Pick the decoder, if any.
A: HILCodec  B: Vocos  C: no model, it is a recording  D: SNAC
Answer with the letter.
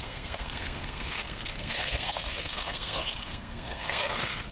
D